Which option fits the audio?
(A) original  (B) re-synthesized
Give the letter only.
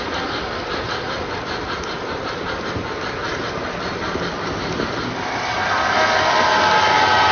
A